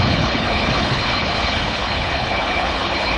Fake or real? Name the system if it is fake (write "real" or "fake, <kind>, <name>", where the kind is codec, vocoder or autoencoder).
fake, codec, HILCodec